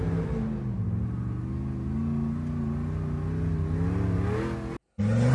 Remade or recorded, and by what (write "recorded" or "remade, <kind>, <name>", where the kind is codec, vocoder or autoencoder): recorded